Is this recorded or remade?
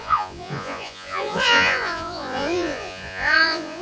remade